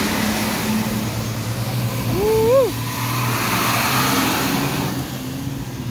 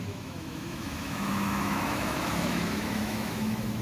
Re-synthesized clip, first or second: second